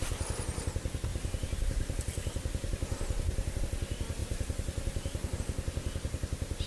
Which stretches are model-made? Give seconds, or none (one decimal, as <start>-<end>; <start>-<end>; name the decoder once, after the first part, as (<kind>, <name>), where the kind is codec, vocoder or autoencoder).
0.0-0.7 (vocoder, BigVGAN v2); 1.1-3.6; 4.2-5.4